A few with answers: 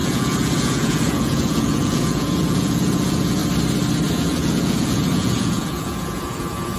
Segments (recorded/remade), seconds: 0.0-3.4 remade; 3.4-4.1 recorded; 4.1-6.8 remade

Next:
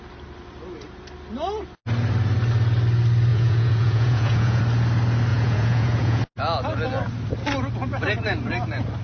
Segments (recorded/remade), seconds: 0.0-3.3 recorded; 3.3-4.6 remade; 4.6-5.3 recorded; 5.3-6.2 remade; 6.2-9.0 recorded

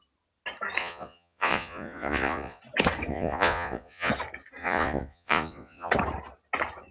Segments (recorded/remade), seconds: 0.0-0.8 recorded; 0.8-2.6 remade; 2.6-3.1 recorded; 3.1-4.1 remade; 4.1-4.6 recorded; 4.6-5.9 remade; 5.9-6.9 recorded

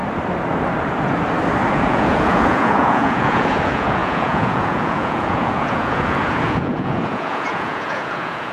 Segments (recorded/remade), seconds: 0.0-1.7 recorded; 1.7-8.5 remade